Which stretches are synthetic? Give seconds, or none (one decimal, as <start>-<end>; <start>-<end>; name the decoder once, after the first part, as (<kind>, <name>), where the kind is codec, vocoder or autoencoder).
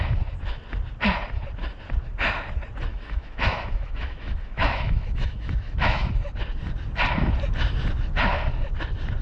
2.9-6.1 (autoencoder, DAC-VAE)